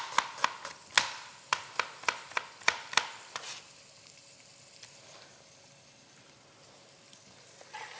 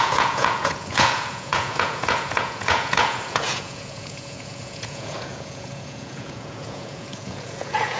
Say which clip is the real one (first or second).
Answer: first